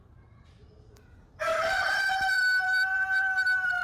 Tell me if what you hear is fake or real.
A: fake